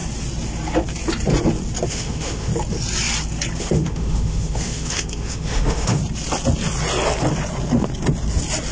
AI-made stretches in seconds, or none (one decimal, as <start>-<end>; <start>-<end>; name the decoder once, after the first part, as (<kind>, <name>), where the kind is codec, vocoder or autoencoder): 1.9-2.5 (autoencoder, DAC-VAE); 3.6-6.0